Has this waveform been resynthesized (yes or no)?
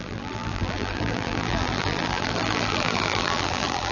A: yes